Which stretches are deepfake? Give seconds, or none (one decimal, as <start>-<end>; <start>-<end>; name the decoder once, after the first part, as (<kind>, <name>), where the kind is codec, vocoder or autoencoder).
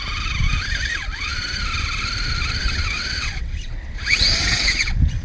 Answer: 2.6-5.2 (vocoder, WaveNeXt)